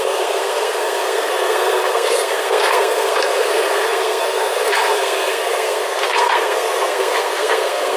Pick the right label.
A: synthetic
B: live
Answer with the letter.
A